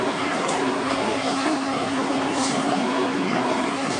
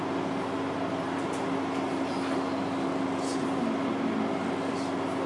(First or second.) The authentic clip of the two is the second